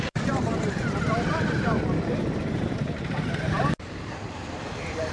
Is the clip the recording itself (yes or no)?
no